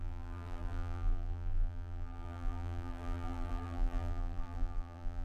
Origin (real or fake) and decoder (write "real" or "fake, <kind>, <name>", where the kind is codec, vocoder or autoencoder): fake, vocoder, BigVGAN v2